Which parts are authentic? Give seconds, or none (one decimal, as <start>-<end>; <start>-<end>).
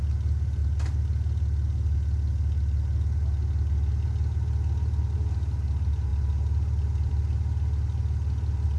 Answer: 0.0-8.8